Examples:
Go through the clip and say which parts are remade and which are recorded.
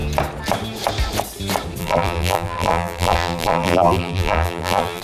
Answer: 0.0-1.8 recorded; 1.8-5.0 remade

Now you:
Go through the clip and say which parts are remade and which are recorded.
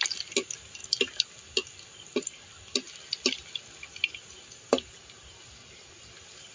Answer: 0.0-6.5 recorded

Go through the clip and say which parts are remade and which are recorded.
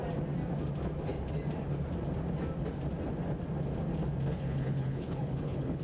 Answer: 0.0-4.3 recorded; 4.3-5.8 remade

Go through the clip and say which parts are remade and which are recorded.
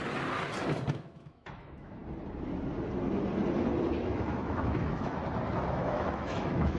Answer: 0.0-0.9 recorded; 0.9-2.0 remade; 2.0-4.0 recorded; 4.0-5.2 remade; 5.2-5.7 recorded; 5.7-6.8 remade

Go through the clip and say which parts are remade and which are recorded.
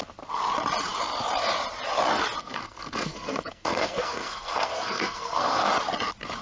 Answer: 0.0-2.4 recorded; 2.4-5.7 remade; 5.7-6.4 recorded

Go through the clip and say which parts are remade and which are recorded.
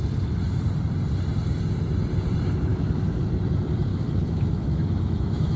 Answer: 0.0-2.7 recorded; 2.7-3.2 remade; 3.2-3.9 recorded; 3.9-5.6 remade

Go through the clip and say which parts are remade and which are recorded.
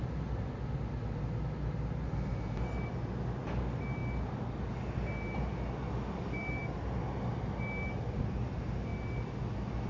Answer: 0.0-9.9 recorded